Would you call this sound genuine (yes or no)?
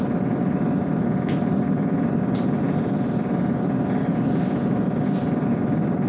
yes